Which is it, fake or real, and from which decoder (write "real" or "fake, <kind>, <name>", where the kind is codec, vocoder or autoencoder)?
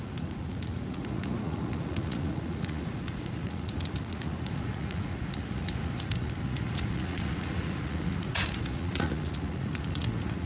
fake, vocoder, Vocos